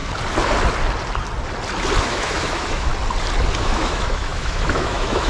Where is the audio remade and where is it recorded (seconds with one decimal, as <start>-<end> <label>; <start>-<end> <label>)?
0.0-2.0 recorded; 2.0-2.9 remade; 2.9-3.6 recorded; 3.6-5.3 remade